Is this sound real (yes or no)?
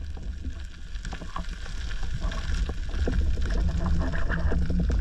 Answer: yes